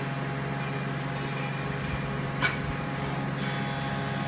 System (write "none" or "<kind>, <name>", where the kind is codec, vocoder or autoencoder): none